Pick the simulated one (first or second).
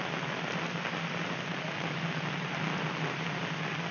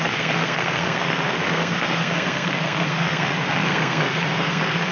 second